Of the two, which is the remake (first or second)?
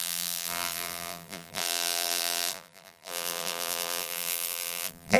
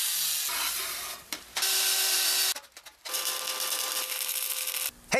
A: first